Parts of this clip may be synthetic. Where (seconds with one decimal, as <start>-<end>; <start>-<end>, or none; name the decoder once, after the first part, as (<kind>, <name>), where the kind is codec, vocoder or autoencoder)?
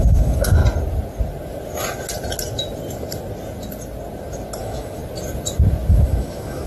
0.0-0.6 (autoencoder, DAC-VAE); 4.6-5.0; 5.9-6.7